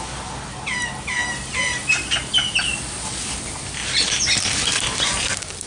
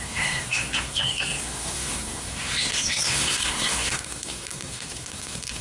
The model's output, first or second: second